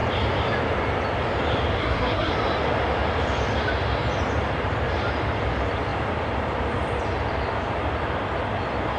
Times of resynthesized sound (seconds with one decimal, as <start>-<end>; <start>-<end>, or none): 1.8-2.3